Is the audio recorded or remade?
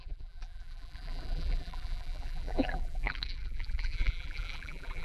remade